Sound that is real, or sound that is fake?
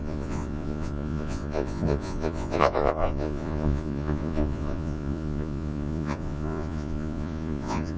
fake